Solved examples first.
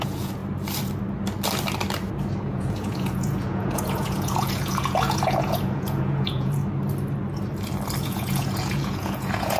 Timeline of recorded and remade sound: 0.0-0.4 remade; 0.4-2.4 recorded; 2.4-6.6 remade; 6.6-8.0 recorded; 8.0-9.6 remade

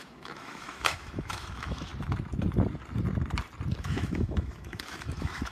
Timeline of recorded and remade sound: 0.0-1.9 remade; 1.9-3.8 recorded; 3.8-5.5 remade

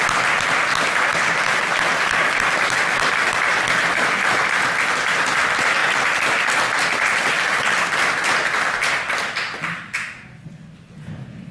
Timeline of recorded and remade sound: 0.0-5.8 recorded; 5.8-7.3 remade; 7.3-11.5 recorded

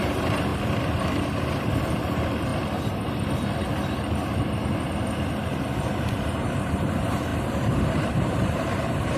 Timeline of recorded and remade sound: 0.0-0.5 remade; 0.5-1.5 recorded; 1.5-2.5 remade; 2.5-5.3 recorded; 5.3-9.2 remade

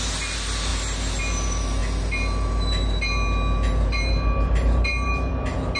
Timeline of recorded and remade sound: 0.0-5.8 recorded

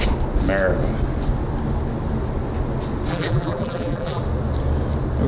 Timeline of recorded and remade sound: 0.0-3.1 recorded; 3.1-4.2 remade; 4.2-5.3 recorded

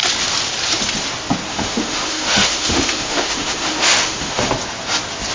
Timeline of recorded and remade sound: 0.0-1.5 recorded; 1.5-4.5 remade; 4.5-5.3 recorded